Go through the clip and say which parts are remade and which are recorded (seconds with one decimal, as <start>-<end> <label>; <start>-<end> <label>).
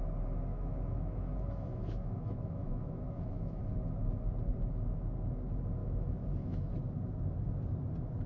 0.0-0.5 recorded; 0.5-3.6 remade; 3.6-5.8 recorded; 5.8-6.7 remade; 6.7-8.3 recorded